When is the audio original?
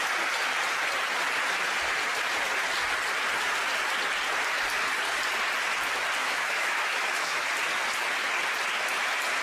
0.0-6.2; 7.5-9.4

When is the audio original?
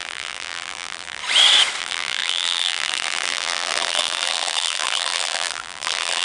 1.2-1.8